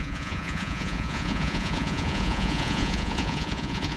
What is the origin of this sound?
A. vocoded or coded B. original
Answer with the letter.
A